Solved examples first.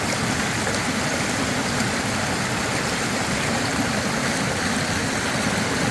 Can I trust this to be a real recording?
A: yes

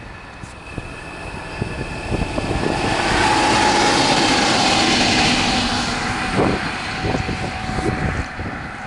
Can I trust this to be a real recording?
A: yes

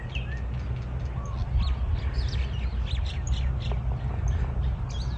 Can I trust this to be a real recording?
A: yes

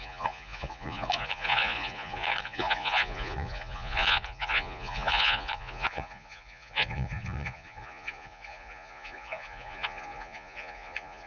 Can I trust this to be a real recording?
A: no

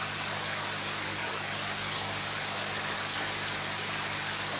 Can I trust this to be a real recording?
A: no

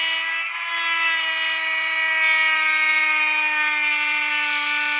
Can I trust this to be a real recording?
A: yes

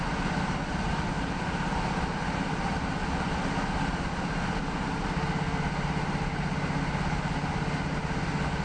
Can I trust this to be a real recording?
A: yes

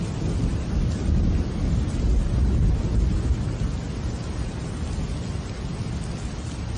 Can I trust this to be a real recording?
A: yes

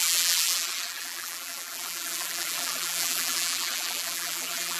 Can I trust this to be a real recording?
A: no